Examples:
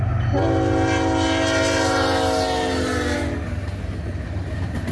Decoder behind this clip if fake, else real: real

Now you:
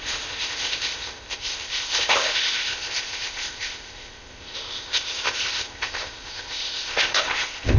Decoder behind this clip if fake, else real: fake, codec, ZipCodec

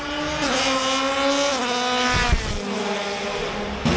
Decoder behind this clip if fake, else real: real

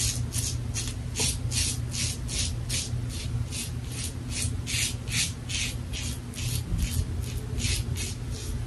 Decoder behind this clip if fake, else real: real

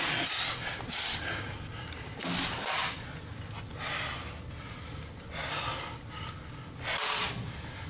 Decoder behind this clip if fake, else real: real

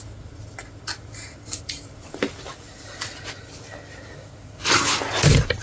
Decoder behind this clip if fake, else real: real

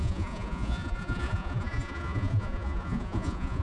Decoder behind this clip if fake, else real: fake, vocoder, Vocos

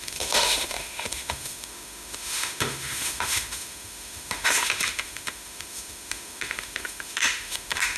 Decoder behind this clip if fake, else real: fake, autoencoder, DAC-VAE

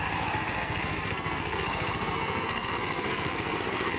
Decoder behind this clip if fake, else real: fake, codec, SNAC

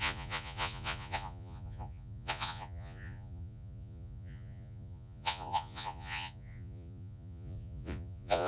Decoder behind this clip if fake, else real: fake, vocoder, Vocos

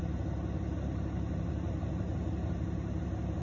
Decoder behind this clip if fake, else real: real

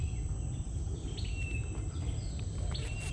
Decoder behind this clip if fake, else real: real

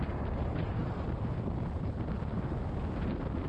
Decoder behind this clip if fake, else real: real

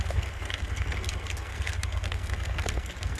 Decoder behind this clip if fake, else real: fake, codec, SNAC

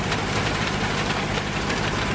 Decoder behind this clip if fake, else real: real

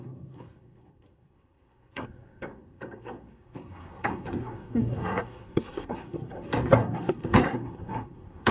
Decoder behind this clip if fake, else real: fake, codec, SNAC